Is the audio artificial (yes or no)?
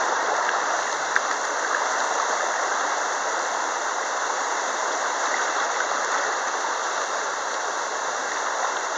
yes